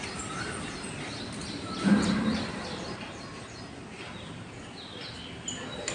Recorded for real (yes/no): yes